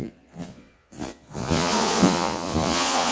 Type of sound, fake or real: fake